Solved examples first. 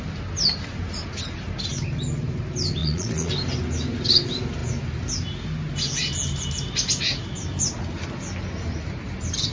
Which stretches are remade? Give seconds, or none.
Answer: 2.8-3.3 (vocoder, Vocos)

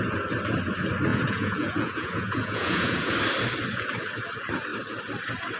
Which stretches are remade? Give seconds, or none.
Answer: 1.1-3.1 (vocoder, Vocos)

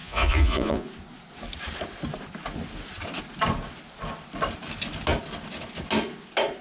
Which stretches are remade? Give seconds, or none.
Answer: 0.0-0.9 (vocoder, Vocos)

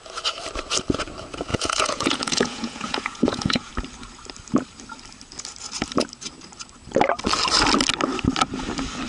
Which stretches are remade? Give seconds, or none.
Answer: 1.5-3.7 (vocoder, Vocos)

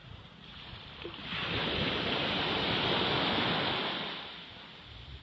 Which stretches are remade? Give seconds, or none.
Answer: 0.0-0.8 (vocoder, Vocos)

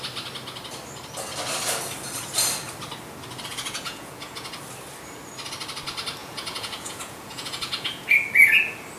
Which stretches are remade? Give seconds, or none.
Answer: 3.5-4.6 (vocoder, Vocos); 6.2-8.1

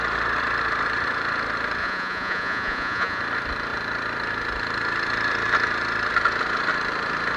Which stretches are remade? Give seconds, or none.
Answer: 1.8-3.2 (vocoder, Vocos)

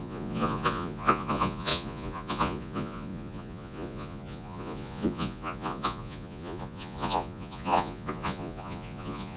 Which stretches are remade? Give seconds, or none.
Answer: 0.0-9.4 (vocoder, Vocos)